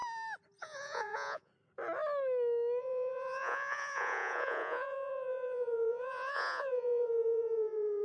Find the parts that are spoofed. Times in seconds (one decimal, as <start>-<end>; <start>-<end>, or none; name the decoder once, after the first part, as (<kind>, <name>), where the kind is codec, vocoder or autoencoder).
0.6-1.5 (vocoder, Vocos); 2.8-8.0